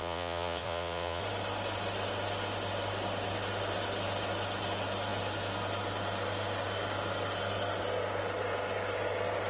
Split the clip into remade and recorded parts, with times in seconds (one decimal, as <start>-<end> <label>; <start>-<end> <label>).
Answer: 0.0-1.2 remade; 1.2-9.5 recorded